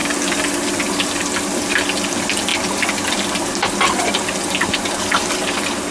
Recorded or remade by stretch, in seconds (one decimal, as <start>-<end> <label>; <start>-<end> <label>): 0.0-5.9 recorded